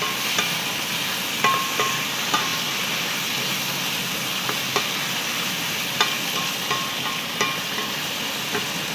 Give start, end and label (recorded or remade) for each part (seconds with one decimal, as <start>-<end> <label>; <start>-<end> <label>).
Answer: 0.0-8.9 recorded